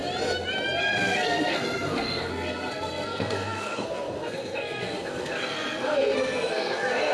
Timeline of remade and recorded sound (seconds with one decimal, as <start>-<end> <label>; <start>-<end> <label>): 0.0-0.8 recorded; 0.8-7.1 remade